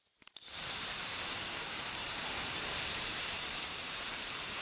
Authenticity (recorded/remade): remade